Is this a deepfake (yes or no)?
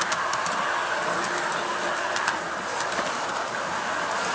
no